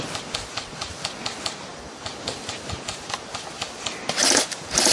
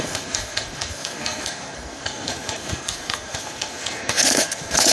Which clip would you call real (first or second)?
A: first